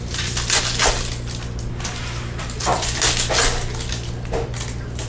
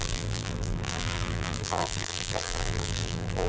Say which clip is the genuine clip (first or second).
first